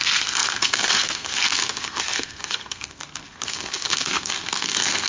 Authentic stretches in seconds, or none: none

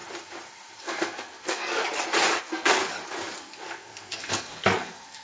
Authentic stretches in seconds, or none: 0.0-0.8; 1.8-2.4; 2.8-3.4